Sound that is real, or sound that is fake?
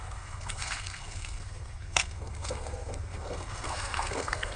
fake